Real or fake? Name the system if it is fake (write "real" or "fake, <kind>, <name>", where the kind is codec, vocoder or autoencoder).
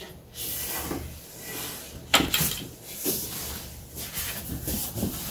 fake, vocoder, BigVGAN v2